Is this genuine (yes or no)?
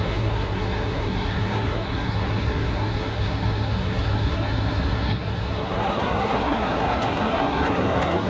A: no